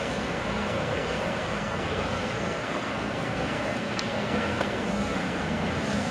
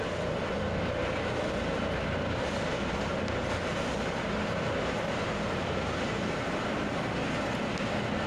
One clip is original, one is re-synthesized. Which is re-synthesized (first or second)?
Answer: first